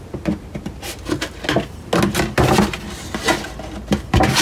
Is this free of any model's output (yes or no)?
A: yes